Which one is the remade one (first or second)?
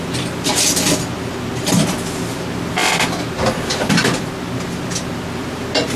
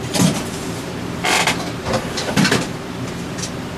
second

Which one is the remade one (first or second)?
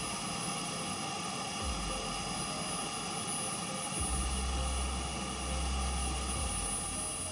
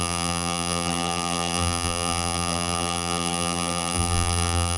second